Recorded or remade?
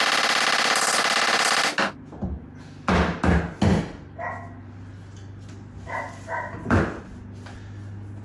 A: recorded